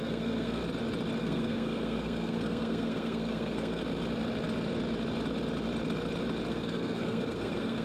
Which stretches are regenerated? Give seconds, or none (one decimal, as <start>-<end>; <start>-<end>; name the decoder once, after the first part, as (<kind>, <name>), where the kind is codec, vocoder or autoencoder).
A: 0.0-0.6 (codec, SNAC); 1.2-3.8; 6.5-7.8